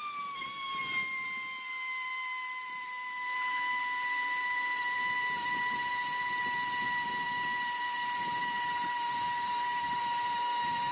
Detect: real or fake fake